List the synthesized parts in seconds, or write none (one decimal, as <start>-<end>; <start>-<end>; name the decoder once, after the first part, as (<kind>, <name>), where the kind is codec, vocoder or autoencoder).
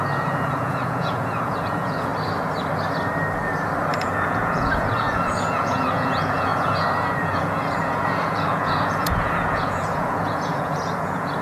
0.0-2.1 (vocoder, Vocos); 4.0-11.4